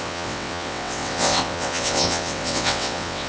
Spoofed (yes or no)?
yes